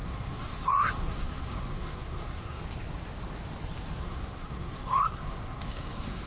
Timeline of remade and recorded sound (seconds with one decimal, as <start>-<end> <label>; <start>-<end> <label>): 0.0-2.6 remade; 2.6-4.0 recorded; 4.0-6.3 remade

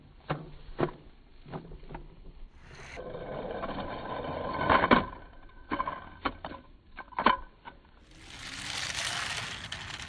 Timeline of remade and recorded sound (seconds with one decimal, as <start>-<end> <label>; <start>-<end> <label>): 0.0-10.1 recorded

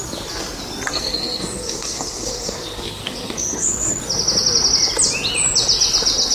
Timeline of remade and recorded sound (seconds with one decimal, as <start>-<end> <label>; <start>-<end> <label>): 0.0-0.9 recorded; 0.9-3.9 remade; 3.9-6.3 recorded

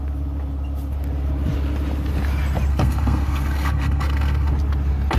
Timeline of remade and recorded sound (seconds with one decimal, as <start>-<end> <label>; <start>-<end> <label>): 0.0-2.7 recorded; 2.7-4.5 remade; 4.5-5.2 recorded